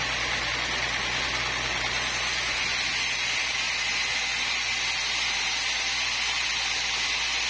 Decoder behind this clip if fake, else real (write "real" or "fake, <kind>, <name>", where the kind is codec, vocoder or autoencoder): real